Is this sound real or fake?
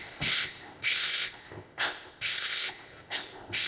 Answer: fake